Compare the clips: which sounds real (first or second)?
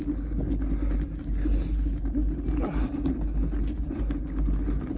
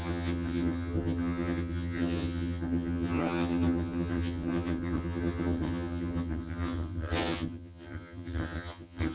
first